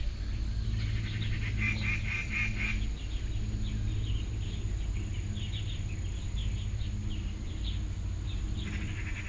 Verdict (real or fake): real